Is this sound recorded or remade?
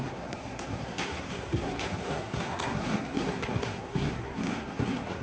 remade